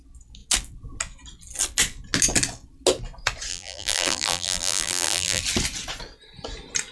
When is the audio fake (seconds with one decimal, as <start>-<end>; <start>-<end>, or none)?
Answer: 3.5-5.4